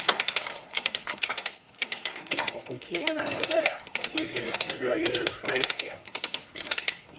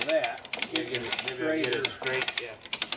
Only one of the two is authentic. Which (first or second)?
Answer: second